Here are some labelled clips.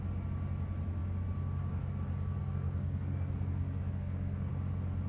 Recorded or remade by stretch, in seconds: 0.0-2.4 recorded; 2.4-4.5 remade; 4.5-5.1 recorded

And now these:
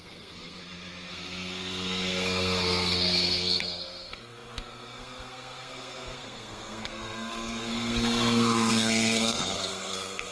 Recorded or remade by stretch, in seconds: 0.0-0.6 remade; 0.6-1.1 recorded; 1.1-10.3 remade